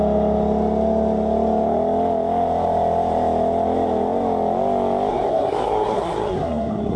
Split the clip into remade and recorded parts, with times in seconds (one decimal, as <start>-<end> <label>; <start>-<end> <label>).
0.0-5.1 recorded; 5.1-7.0 remade